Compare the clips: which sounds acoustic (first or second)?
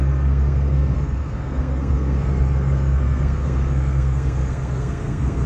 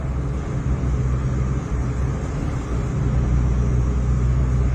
second